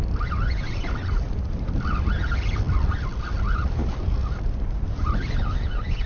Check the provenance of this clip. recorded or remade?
recorded